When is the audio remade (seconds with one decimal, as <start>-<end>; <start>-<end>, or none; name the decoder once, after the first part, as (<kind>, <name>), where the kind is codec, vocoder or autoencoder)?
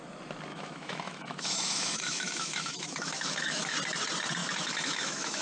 0.5-3.7 (autoencoder, DAC-VAE); 4.4-5.4